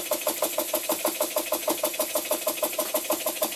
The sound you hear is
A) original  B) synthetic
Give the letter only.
A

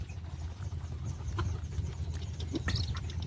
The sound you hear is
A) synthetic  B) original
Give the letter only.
B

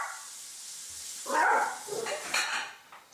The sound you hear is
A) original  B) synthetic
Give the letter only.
A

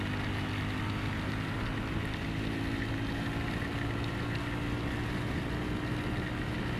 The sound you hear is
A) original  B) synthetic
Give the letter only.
A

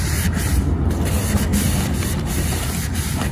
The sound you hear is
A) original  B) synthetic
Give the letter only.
A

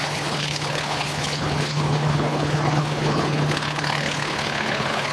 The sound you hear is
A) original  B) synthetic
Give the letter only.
B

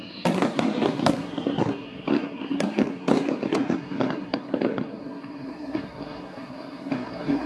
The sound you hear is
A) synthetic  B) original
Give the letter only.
A